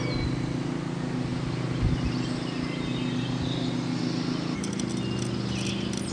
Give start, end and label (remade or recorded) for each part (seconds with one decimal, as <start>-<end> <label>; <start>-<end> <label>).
0.0-6.1 recorded